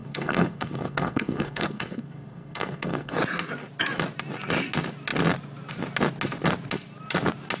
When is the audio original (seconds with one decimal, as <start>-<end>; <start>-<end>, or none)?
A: 3.2-7.6